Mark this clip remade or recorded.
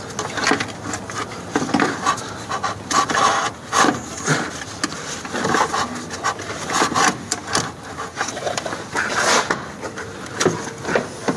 recorded